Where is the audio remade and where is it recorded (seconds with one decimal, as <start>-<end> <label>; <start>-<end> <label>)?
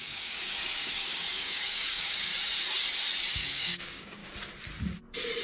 0.0-2.3 remade; 2.3-3.3 recorded; 3.3-4.2 remade; 4.2-5.4 recorded